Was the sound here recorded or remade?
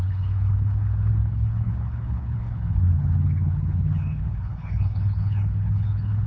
remade